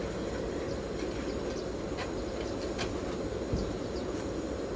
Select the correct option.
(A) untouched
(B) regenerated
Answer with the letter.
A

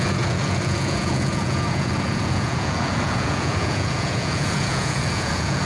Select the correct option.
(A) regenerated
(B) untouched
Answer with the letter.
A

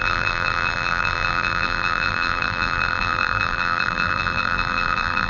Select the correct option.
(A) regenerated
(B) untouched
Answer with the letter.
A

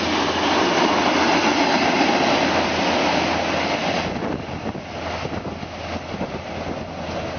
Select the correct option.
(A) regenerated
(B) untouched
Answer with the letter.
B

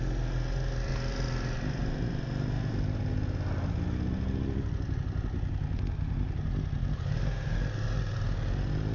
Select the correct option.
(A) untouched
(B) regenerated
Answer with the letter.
A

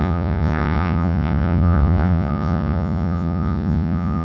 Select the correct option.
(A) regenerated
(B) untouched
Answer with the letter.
A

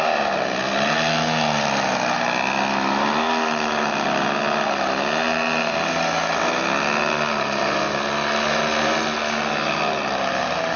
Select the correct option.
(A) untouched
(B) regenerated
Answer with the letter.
A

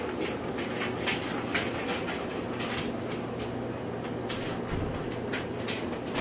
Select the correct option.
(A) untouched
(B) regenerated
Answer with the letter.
A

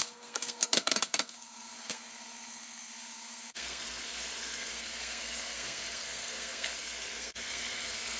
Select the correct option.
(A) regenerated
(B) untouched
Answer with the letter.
A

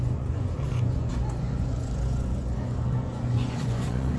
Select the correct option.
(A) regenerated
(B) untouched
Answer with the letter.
A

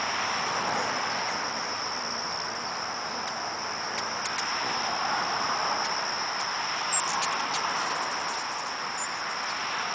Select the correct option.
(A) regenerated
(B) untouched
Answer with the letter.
B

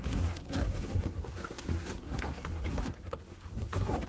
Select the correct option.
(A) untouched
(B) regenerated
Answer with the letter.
B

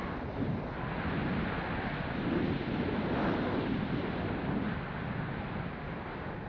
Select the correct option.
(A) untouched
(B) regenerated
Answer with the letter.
A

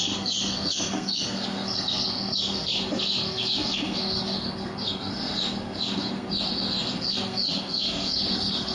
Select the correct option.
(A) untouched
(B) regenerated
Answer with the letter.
B